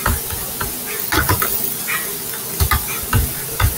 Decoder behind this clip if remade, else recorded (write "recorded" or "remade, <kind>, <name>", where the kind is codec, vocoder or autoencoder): recorded